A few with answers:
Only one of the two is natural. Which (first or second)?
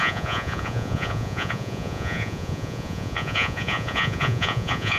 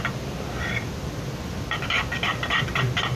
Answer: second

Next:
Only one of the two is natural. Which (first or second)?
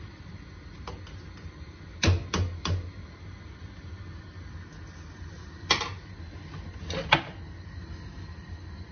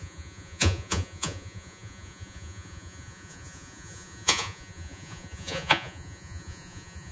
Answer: first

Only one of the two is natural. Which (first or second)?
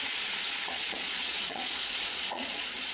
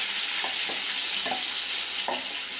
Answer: second